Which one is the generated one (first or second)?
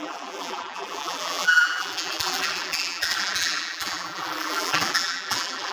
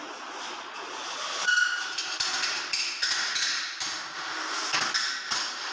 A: first